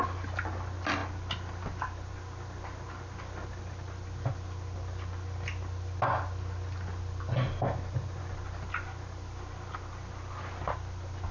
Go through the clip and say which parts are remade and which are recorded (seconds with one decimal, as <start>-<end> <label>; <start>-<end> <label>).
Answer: 0.0-11.3 recorded